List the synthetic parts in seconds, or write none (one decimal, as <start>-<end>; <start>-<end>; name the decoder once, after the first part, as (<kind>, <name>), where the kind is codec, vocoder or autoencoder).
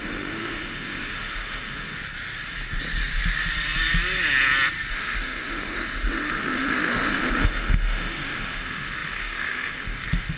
0.0-2.0 (autoencoder, DAC-VAE); 4.9-10.4